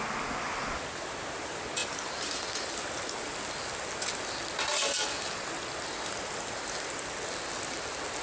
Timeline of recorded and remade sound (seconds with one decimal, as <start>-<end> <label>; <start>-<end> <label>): 0.0-8.2 recorded